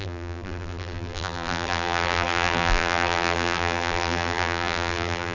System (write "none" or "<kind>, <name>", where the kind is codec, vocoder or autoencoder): vocoder, BigVGAN v2